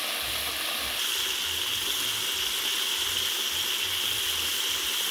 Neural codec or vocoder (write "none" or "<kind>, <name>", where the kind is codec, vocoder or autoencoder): none